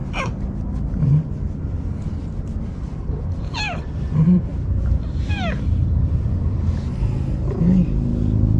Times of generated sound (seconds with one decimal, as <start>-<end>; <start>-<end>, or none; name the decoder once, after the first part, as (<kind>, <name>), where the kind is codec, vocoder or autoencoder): 2.9-6.7 (vocoder, BigVGAN v2)